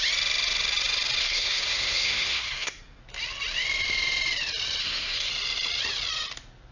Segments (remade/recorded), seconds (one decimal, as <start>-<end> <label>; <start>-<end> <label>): 0.0-1.2 recorded; 1.2-3.0 remade; 3.0-4.8 recorded; 4.8-5.3 remade; 5.3-6.7 recorded